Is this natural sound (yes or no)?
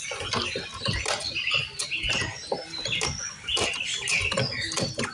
yes